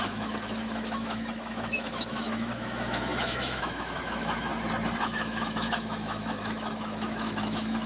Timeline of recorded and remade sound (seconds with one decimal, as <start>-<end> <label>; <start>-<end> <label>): 0.0-4.5 remade; 4.5-5.0 recorded; 5.0-7.9 remade